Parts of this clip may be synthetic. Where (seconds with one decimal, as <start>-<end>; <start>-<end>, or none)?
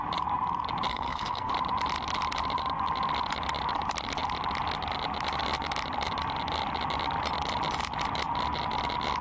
0.9-1.5